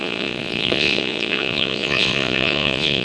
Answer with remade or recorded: remade